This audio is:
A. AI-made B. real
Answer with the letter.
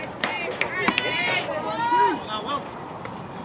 A